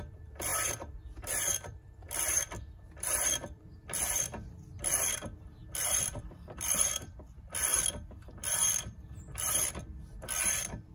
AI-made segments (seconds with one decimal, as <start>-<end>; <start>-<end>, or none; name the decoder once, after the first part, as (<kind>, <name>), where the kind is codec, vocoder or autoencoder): 0.0-10.9 (vocoder, BigVGAN v2)